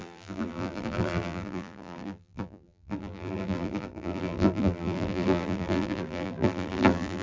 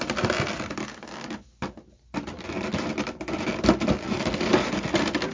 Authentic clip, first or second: second